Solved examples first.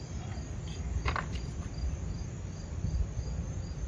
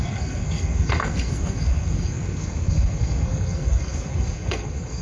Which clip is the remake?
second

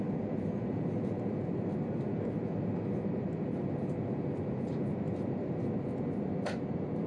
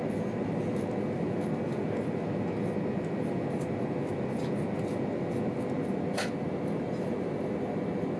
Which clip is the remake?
first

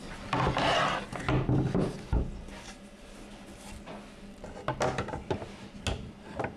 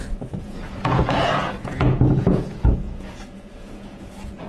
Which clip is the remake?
second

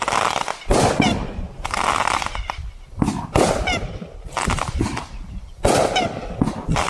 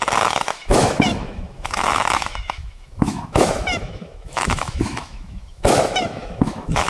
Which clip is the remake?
second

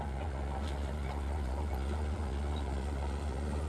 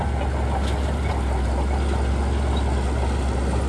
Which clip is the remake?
first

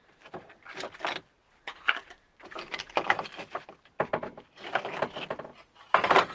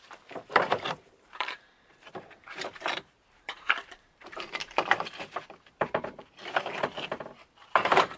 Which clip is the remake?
second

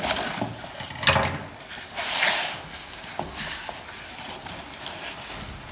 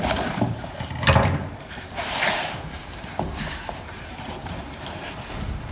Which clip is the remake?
second